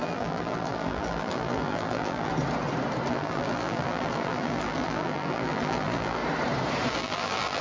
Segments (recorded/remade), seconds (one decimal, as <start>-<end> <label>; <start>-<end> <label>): 0.0-2.3 remade; 2.3-3.1 recorded; 3.1-6.2 remade; 6.2-6.9 recorded; 6.9-7.6 remade